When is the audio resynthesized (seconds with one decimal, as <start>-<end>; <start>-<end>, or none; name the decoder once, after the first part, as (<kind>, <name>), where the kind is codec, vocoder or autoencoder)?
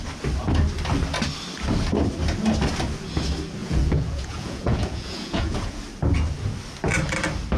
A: 3.6-5.8 (vocoder, Vocos)